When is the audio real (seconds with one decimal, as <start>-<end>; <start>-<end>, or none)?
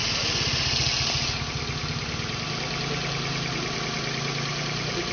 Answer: 0.0-5.1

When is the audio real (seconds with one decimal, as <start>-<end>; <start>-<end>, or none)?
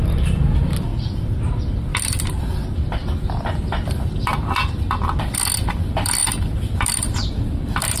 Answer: 0.9-1.5